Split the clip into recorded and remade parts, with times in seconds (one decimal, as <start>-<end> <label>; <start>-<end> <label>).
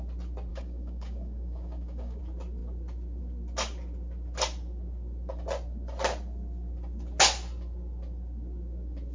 0.0-0.5 recorded; 0.5-2.2 remade; 2.2-9.1 recorded